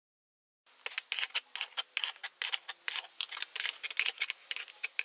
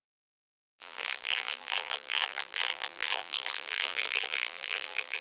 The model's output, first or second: second